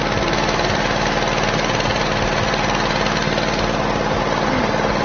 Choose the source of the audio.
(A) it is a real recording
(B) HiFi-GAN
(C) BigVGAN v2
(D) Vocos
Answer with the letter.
A